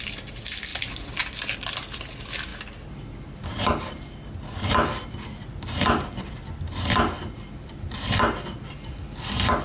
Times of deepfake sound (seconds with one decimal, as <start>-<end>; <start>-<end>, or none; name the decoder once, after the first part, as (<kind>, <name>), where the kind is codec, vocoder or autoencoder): none

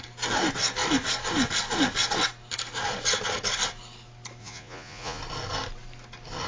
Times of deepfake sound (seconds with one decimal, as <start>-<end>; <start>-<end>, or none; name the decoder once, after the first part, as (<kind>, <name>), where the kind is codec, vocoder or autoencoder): 4.4-5.2 (vocoder, Vocos)

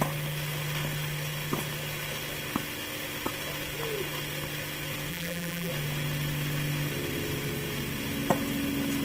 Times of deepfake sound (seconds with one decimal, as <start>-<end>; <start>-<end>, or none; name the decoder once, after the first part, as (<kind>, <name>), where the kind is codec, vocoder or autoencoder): 5.1-5.7 (vocoder, BigVGAN v2)

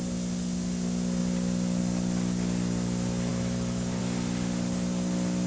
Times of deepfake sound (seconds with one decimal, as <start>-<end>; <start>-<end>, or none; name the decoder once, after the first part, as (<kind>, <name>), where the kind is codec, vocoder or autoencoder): 3.3-4.0 (autoencoder, DAC-VAE)

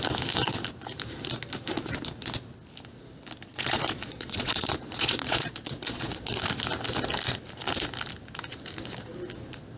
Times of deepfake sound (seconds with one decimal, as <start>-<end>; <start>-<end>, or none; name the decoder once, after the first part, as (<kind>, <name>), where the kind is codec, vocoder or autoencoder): 3.5-6.4 (vocoder, Vocos)

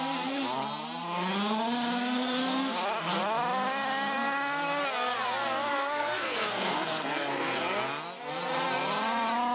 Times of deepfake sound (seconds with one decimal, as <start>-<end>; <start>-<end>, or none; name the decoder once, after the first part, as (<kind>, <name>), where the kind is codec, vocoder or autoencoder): 5.7-7.6 (codec, SNAC)

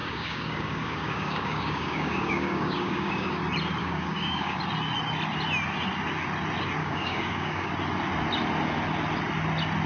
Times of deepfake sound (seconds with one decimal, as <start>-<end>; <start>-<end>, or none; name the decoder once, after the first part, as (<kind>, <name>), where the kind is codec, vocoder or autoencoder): 0.0-3.4 (codec, DAC); 3.8-4.6; 6.8-7.7